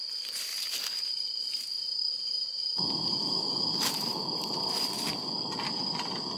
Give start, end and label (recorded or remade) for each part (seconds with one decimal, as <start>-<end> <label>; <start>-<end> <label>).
0.0-6.4 recorded